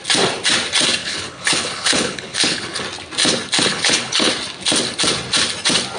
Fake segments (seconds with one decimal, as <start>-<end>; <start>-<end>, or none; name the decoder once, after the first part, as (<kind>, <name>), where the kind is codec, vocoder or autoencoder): 1.0-2.8 (codec, HILCodec); 3.7-4.3